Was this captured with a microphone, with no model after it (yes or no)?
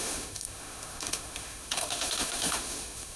no